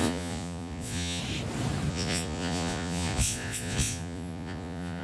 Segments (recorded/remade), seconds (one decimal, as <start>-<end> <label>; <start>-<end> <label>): 0.0-1.2 remade; 1.2-1.9 recorded; 1.9-5.0 remade